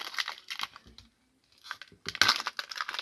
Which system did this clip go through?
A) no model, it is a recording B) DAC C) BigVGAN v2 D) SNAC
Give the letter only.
A